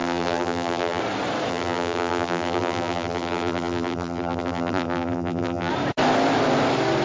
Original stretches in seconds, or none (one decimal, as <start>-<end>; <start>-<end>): 1.0-1.5; 5.7-7.0